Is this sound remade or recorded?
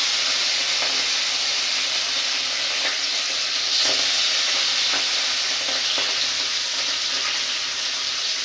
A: recorded